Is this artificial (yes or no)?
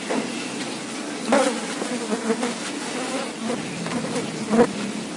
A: no